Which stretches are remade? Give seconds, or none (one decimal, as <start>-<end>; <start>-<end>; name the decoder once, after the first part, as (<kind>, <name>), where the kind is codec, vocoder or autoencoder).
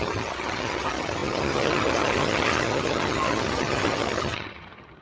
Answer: 0.0-5.0 (vocoder, HiFi-GAN)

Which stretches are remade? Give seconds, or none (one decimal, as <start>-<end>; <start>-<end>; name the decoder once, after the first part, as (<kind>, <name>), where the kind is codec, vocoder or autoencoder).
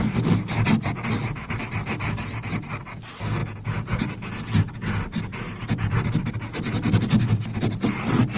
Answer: 3.4-4.1 (vocoder, Vocos)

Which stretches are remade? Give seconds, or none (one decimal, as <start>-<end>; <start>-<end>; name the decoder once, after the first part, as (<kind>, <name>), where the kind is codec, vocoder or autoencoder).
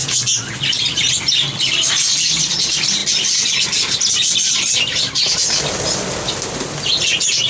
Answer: none